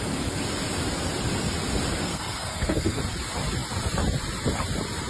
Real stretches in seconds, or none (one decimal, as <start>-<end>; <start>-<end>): 0.0-2.0; 3.0-5.1